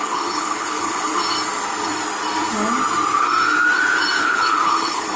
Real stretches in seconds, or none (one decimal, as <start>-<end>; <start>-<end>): 1.1-4.2